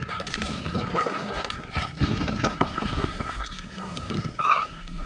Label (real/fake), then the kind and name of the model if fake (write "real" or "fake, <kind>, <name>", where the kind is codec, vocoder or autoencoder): fake, codec, SNAC